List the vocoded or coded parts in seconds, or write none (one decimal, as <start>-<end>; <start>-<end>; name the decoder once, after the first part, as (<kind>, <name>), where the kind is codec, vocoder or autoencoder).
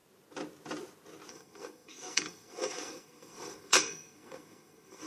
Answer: 1.3-5.1 (codec, SNAC)